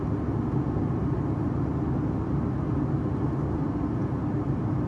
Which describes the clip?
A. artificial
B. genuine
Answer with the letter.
B